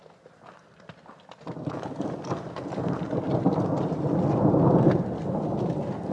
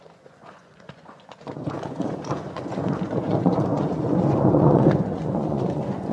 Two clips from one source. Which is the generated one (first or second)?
second